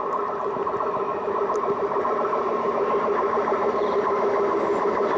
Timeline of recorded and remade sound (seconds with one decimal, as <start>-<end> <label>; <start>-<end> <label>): 0.0-1.1 recorded; 1.1-4.2 remade; 4.2-5.2 recorded